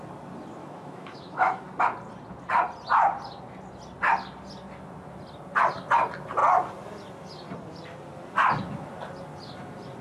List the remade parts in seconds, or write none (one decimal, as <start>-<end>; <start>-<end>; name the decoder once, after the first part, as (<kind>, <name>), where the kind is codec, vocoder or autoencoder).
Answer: 0.6-1.6 (autoencoder, DAC-VAE)